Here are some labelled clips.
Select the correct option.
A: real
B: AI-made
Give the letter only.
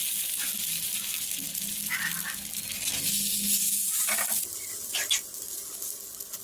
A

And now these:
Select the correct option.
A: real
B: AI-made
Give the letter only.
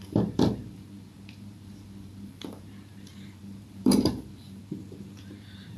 B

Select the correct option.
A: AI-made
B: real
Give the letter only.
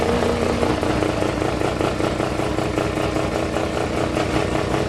B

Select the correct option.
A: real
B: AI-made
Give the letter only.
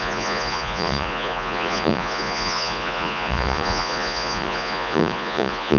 B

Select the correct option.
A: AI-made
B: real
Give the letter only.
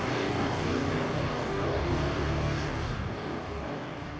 A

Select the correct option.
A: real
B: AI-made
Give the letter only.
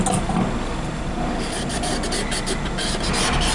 A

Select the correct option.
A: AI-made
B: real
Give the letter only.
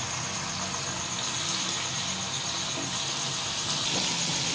B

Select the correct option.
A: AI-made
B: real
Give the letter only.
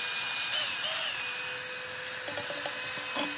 B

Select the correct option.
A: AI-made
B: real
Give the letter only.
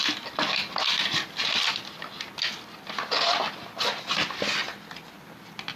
B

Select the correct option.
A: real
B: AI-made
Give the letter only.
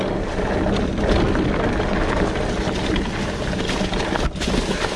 A